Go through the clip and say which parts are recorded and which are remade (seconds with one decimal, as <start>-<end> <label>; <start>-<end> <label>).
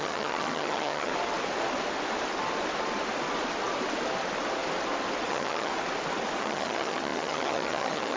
0.0-1.1 remade; 1.1-5.3 recorded; 5.3-5.7 remade; 5.7-6.4 recorded; 6.4-8.2 remade